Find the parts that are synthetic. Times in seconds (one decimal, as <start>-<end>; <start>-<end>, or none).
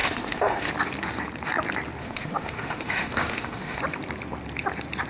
0.0-0.7; 2.0-3.8